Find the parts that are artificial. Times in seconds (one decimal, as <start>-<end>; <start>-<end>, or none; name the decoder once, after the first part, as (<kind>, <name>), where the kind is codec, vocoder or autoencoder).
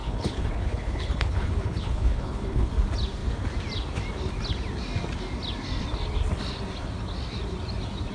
0.0-2.7 (codec, HILCodec)